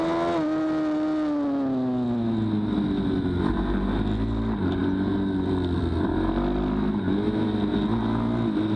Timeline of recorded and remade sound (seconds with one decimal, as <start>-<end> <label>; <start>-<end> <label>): 0.0-8.8 recorded